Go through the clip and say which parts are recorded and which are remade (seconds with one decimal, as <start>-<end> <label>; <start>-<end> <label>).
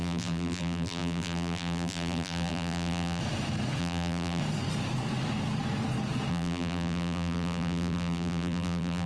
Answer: 0.0-3.2 remade; 3.2-3.8 recorded; 3.8-4.4 remade; 4.4-6.3 recorded; 6.3-9.1 remade